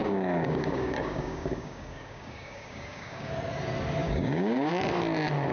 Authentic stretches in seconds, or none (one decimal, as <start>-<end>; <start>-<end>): 3.3-4.0; 4.7-5.5